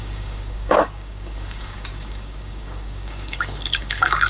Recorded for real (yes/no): no